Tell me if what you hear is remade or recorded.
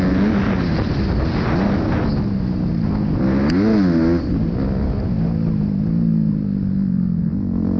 recorded